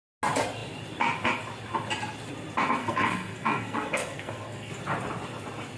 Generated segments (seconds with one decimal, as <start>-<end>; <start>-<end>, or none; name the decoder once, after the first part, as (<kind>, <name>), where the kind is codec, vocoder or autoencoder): 2.8-4.7 (codec, SNAC)